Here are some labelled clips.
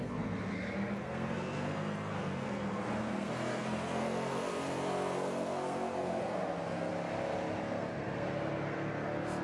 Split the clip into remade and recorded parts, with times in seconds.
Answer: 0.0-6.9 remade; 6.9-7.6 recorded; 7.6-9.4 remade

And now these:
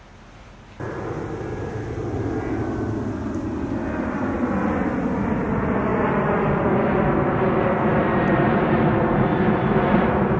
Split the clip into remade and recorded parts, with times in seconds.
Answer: 0.0-10.4 recorded

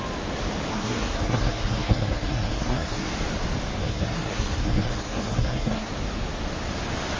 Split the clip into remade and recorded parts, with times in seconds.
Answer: 0.0-0.7 recorded; 0.7-3.1 remade; 3.1-3.8 recorded; 3.8-5.9 remade; 5.9-7.2 recorded

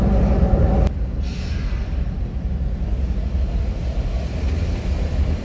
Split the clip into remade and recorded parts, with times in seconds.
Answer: 0.0-5.4 recorded

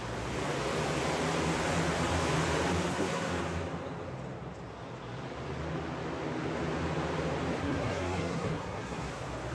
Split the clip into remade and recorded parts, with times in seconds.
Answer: 0.0-2.9 recorded; 2.9-3.4 remade; 3.4-7.6 recorded; 7.6-9.1 remade; 9.1-9.5 recorded

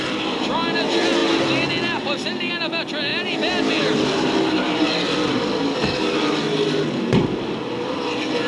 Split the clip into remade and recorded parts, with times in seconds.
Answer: 0.0-8.5 recorded